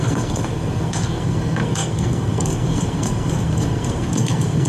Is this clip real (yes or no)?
no